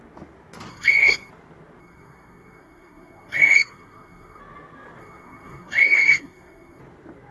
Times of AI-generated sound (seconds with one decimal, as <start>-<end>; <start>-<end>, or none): 0.7-1.3; 1.8-4.4; 5.0-6.8